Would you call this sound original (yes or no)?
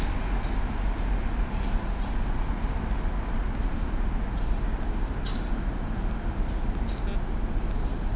yes